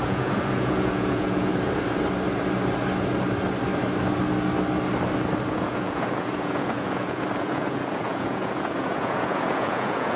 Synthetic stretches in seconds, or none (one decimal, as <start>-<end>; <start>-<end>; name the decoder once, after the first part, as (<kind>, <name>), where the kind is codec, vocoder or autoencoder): 0.0-1.5 (vocoder, Vocos); 5.5-10.2